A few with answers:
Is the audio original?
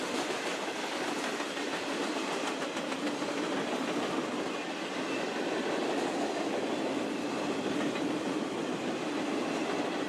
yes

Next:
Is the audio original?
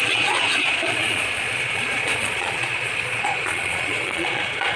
no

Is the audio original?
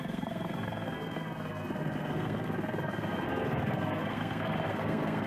no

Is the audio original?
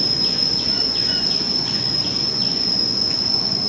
no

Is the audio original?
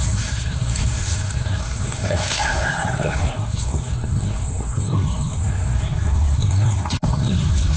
no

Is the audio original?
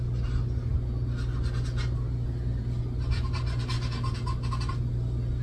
yes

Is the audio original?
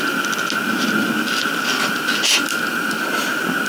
yes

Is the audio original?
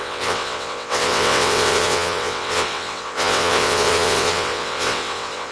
no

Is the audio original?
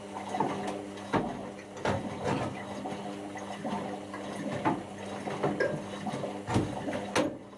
yes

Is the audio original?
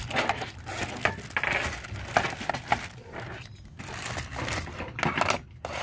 yes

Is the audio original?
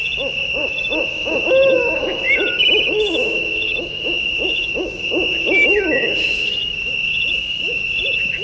no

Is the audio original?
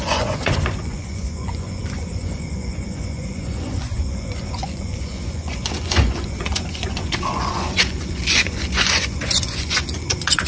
no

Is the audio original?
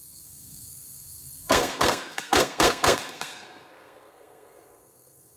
no